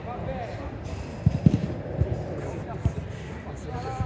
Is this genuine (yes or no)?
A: yes